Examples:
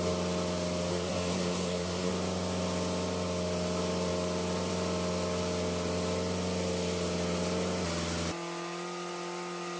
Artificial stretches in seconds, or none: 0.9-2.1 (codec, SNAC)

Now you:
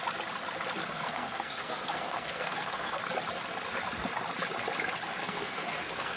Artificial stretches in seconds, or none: 0.8-3.0 (codec, SNAC); 5.2-6.2

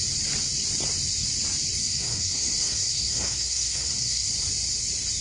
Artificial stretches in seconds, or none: 1.8-4.3 (codec, SNAC)

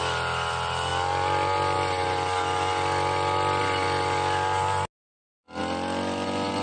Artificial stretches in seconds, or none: none

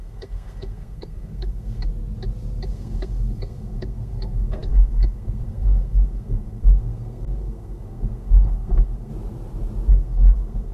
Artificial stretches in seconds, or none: 0.0-1.9 (codec, SNAC); 2.7-9.1; 9.9-10.7